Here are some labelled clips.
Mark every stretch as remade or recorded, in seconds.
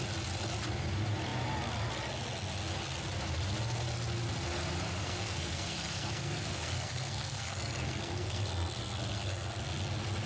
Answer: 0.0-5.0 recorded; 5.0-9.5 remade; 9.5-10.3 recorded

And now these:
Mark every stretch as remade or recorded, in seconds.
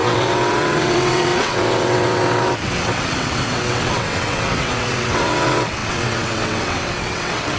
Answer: 0.0-7.6 remade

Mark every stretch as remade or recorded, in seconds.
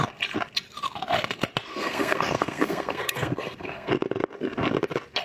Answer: 0.0-1.7 recorded; 1.7-3.9 remade; 3.9-5.2 recorded